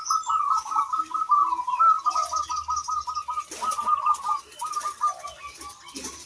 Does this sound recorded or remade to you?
recorded